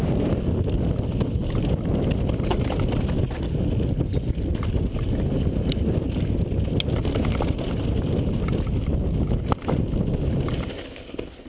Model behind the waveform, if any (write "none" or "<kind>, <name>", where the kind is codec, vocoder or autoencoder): none